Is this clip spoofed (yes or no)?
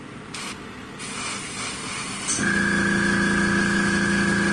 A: no